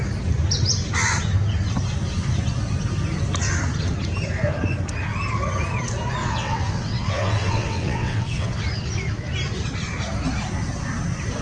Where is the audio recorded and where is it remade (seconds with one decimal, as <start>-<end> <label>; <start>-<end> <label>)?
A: 0.0-6.2 recorded; 6.2-8.6 remade; 8.6-11.4 recorded